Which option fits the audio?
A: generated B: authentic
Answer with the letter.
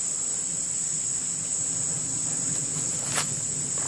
B